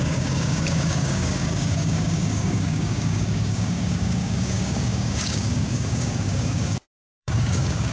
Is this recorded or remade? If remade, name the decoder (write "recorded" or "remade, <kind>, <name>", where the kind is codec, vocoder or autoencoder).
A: remade, codec, DAC